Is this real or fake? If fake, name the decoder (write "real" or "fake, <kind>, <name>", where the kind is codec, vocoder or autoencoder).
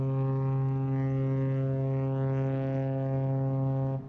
real